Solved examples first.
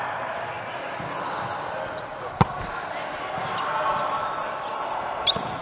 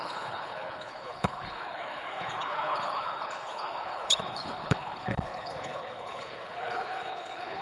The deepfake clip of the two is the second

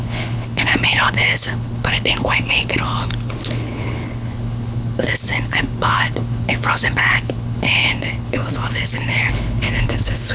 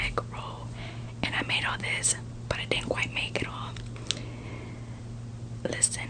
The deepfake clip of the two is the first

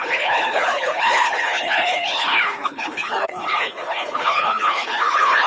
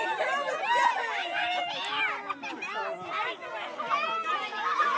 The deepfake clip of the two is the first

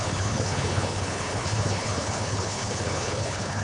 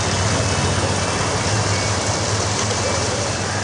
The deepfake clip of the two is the first